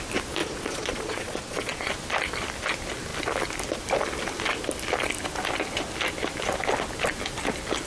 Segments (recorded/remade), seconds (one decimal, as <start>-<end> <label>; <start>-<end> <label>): 0.0-0.4 recorded; 0.4-1.9 remade; 1.9-7.9 recorded